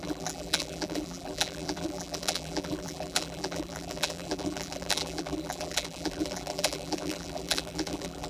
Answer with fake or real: fake